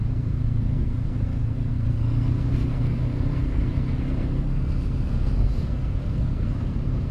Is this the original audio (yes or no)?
no